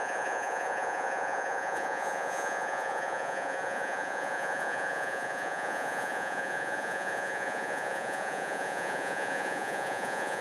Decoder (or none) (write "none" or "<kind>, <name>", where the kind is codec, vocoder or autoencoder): vocoder, Vocos